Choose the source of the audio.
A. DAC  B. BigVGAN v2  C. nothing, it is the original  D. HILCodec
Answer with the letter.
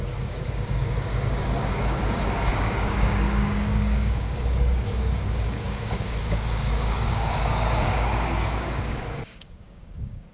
A